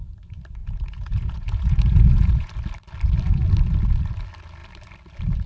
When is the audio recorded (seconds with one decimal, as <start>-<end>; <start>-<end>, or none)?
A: 0.0-0.6; 2.5-5.5